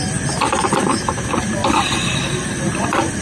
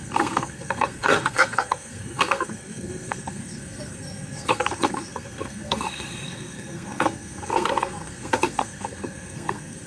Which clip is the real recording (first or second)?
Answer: first